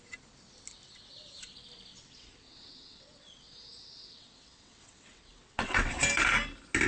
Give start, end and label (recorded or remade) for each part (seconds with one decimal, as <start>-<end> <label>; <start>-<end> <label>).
0.0-1.9 recorded; 1.9-6.0 remade; 6.0-6.9 recorded